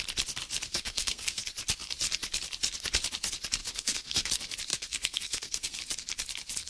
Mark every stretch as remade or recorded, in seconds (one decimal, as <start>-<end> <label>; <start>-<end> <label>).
0.0-0.7 recorded; 0.7-1.4 remade; 1.4-3.6 recorded; 3.6-4.3 remade; 4.3-4.7 recorded; 4.7-5.8 remade; 5.8-6.7 recorded